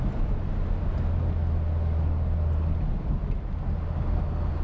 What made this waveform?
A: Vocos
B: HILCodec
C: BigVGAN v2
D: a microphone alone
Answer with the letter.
D